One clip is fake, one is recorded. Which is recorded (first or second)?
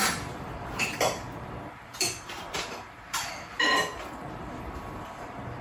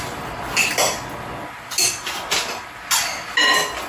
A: second